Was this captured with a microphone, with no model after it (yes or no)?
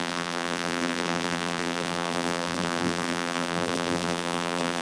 no